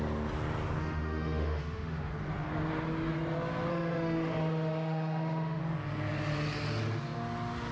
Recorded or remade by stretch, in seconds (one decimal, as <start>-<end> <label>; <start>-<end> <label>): 0.0-0.8 recorded; 0.8-2.1 remade; 2.1-3.7 recorded; 3.7-5.6 remade; 5.6-7.7 recorded